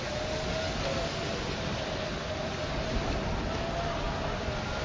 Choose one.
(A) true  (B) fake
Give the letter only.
A